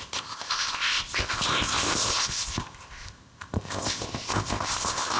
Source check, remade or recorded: remade